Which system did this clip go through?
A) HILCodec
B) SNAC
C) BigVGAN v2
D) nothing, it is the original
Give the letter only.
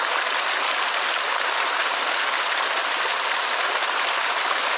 D